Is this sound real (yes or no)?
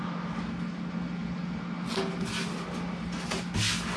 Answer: yes